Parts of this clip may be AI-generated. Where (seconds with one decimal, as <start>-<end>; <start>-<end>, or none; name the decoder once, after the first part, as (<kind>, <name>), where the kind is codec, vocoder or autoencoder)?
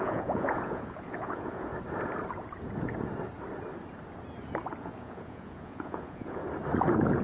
0.0-1.7 (vocoder, Vocos); 4.8-6.4